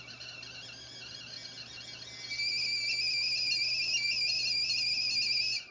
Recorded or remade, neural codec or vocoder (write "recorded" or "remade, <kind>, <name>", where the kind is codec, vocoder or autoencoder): recorded